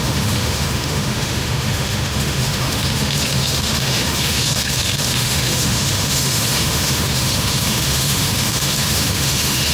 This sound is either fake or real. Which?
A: fake